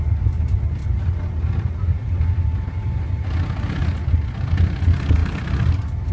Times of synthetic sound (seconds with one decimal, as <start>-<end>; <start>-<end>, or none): none